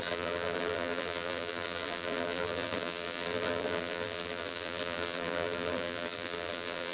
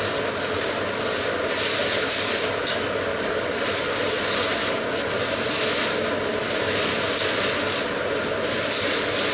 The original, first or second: second